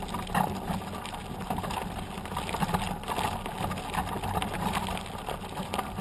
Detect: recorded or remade recorded